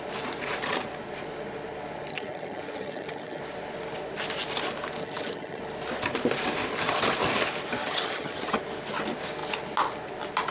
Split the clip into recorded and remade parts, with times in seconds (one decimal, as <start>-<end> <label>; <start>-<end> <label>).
0.0-2.1 recorded; 2.1-3.4 remade; 3.4-5.0 recorded; 5.0-5.6 remade; 5.6-7.8 recorded; 7.8-8.6 remade; 8.6-10.5 recorded